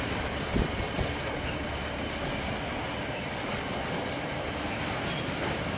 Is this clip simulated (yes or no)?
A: no